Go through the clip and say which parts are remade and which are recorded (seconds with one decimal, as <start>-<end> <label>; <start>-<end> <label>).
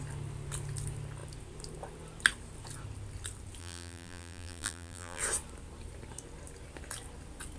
0.0-3.6 recorded; 3.6-5.2 remade; 5.2-7.6 recorded